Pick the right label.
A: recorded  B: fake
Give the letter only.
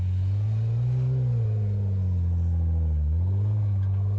A